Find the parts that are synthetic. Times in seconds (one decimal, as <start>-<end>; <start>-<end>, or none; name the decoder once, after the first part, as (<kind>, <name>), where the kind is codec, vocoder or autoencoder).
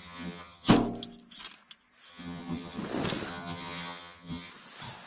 0.0-0.7 (vocoder, HiFi-GAN); 2.1-2.8; 3.3-4.5